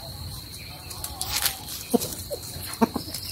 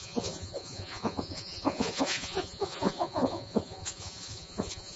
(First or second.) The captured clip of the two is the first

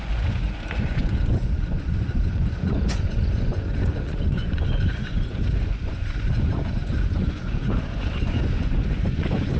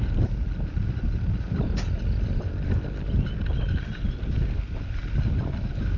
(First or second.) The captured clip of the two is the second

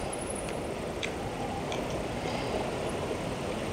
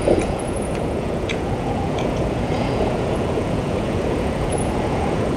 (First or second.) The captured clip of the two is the first